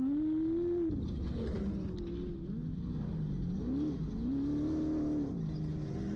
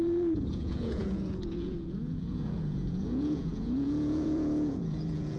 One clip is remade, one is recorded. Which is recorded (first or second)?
first